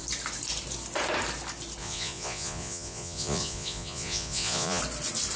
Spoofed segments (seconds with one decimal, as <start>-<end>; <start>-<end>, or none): 1.8-4.8